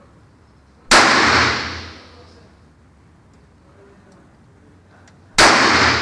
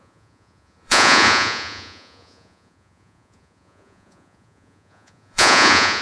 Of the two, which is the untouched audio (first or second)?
first